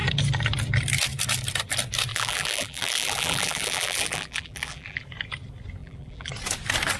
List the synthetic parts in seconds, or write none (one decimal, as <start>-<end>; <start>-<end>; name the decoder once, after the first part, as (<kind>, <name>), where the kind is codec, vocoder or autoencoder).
2.1-5.0 (vocoder, BigVGAN v2); 5.8-6.3